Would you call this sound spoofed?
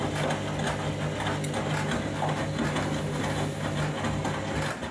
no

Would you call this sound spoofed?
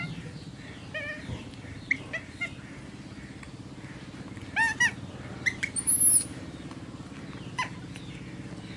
no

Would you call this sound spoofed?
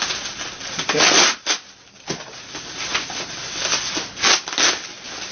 no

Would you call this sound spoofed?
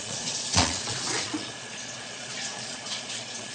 yes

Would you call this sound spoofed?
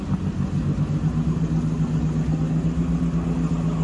no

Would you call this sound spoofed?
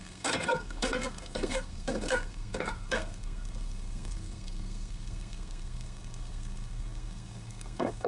yes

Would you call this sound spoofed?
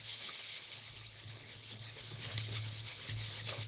yes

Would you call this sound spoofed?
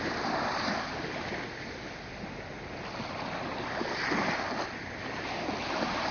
no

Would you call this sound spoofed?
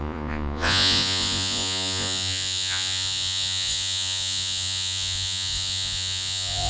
yes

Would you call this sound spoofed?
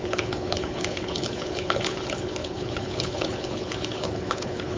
yes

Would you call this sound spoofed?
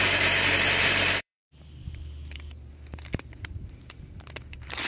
yes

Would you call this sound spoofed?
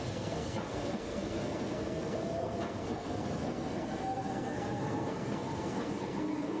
yes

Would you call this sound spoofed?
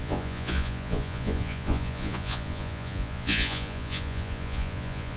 yes